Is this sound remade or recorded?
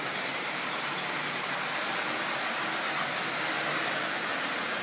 recorded